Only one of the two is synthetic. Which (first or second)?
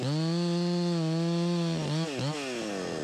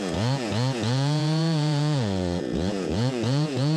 second